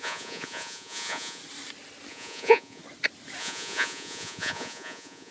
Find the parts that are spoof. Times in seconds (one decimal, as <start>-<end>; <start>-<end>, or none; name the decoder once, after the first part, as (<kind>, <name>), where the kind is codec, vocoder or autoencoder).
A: 0.0-1.4 (vocoder, Vocos); 2.1-2.8; 3.4-5.3